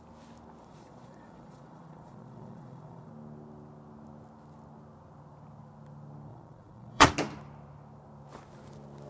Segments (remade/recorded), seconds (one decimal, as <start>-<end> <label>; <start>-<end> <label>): 0.0-0.6 recorded; 0.6-3.1 remade; 3.1-6.3 recorded; 6.3-7.1 remade; 7.1-9.1 recorded